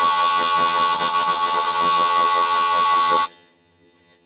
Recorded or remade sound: remade